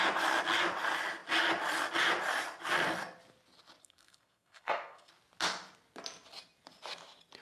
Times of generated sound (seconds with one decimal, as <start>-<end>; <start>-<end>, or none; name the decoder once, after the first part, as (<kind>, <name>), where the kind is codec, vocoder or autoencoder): 3.8-5.1 (codec, SNAC)